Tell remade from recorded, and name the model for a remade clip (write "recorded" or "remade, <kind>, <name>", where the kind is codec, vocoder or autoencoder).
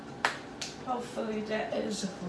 recorded